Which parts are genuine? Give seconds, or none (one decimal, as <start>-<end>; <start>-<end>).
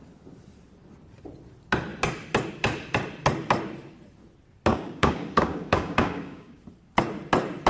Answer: 0.0-4.7; 6.6-7.7